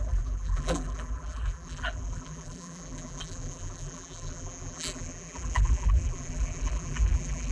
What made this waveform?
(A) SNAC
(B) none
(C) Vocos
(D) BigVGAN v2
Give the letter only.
D